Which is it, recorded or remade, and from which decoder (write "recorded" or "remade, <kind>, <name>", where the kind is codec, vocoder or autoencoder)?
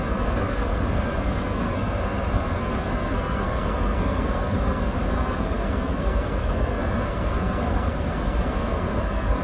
remade, codec, SNAC